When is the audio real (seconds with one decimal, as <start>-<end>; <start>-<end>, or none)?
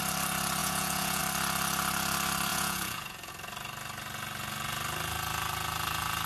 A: 0.0-0.6; 1.2-2.5; 3.3-6.3